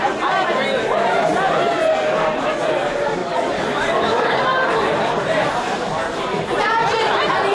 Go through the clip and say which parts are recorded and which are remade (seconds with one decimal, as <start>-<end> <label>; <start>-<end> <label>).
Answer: 0.0-3.2 recorded; 3.2-4.4 remade; 4.4-7.5 recorded